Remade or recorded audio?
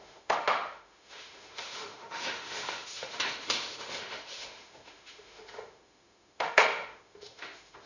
remade